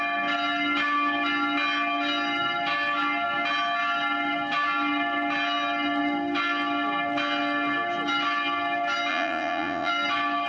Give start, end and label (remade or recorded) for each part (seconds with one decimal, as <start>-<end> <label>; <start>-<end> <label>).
0.0-9.1 recorded; 9.1-9.9 remade; 9.9-10.5 recorded